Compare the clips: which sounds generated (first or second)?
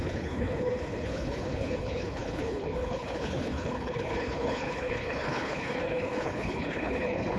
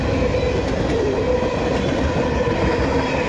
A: first